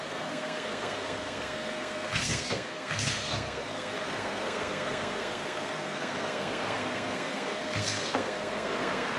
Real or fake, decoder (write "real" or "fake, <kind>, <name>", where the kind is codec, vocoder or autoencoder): fake, codec, SNAC